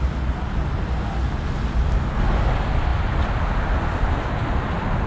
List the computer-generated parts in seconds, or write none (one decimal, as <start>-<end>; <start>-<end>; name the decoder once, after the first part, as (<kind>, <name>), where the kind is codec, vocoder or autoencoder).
none

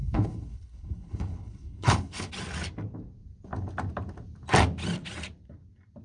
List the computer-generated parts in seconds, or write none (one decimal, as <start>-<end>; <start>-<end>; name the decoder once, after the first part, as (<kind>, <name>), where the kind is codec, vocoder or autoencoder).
0.0-2.3 (codec, HILCodec)

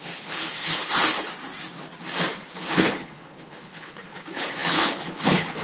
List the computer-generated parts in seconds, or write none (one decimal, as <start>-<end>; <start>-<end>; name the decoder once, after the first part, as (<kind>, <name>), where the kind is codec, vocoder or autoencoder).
0.0-1.3 (codec, HILCodec); 2.5-5.6

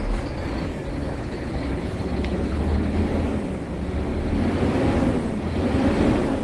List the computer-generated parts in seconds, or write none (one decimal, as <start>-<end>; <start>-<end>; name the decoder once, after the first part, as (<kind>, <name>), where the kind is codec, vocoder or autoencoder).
1.0-3.0 (codec, HILCodec)

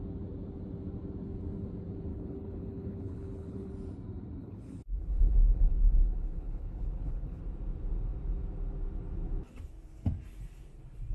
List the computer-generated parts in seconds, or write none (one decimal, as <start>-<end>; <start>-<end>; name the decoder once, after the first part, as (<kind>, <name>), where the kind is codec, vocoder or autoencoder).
2.1-3.7 (codec, HILCodec); 4.4-7.4